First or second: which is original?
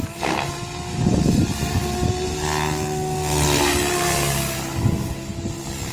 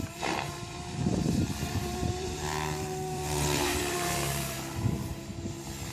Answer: first